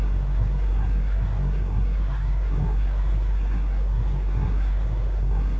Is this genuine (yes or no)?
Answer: no